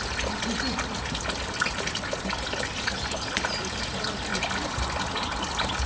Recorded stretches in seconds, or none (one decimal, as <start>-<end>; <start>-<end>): 0.0-5.9